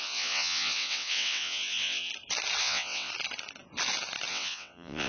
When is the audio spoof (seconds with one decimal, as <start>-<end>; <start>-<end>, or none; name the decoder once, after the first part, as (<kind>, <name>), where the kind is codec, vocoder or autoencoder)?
0.0-2.1 (vocoder, WaveNeXt); 2.6-3.1; 4.3-5.1